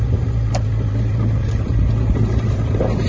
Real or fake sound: fake